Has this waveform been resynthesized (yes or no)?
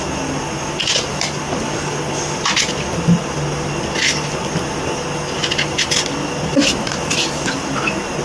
no